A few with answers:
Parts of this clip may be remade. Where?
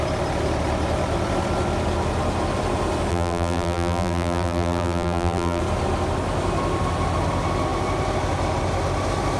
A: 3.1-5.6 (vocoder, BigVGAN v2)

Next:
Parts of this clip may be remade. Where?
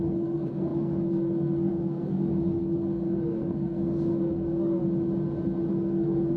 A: 0.0-4.8 (codec, SNAC); 5.7-6.4